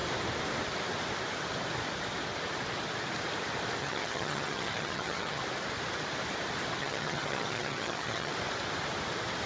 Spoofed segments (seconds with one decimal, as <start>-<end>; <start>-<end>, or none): 3.8-5.4; 6.8-8.3